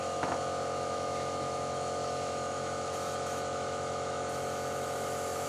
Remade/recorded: remade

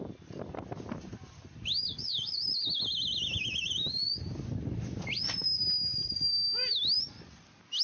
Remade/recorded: recorded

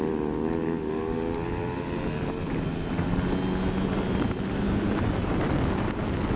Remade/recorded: recorded